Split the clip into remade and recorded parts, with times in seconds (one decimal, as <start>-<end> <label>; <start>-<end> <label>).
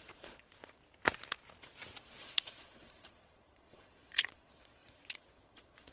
0.0-0.8 remade; 0.8-2.0 recorded; 2.0-5.9 remade